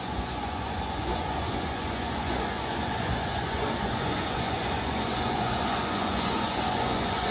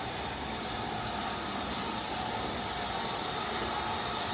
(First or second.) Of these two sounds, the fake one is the first